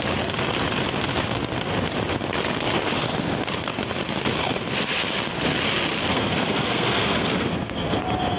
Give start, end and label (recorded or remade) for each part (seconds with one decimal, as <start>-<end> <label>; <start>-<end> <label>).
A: 0.0-6.1 recorded; 6.1-8.0 remade; 8.0-8.4 recorded